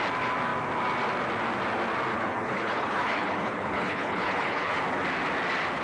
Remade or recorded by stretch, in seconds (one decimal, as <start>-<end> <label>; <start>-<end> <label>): 0.0-2.1 recorded; 2.1-4.8 remade; 4.8-5.8 recorded